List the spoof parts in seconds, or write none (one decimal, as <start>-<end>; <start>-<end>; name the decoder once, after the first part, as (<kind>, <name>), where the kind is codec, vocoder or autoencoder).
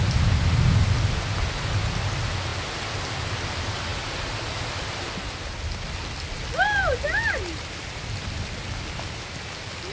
none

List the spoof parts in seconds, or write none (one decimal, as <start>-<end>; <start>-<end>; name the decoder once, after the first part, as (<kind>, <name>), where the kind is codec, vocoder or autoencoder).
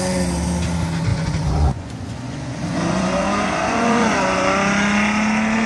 1.1-4.5 (vocoder, Vocos)